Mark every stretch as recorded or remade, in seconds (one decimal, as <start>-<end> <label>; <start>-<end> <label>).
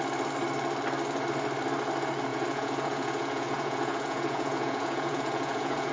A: 0.0-2.3 recorded; 2.3-5.9 remade